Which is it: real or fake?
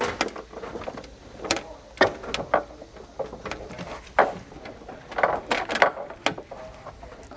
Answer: real